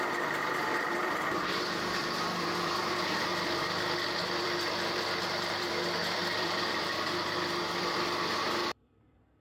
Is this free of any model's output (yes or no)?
no